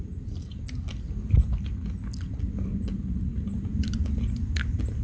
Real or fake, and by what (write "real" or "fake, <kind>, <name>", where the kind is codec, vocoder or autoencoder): real